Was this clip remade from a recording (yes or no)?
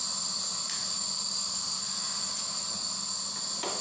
no